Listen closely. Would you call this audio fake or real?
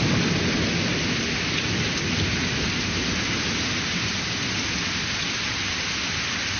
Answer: real